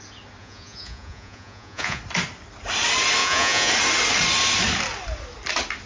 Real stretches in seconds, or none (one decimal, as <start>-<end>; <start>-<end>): 0.0-0.4; 2.0-3.2; 3.7-5.9